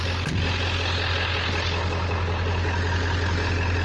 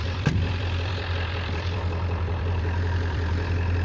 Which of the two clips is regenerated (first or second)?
second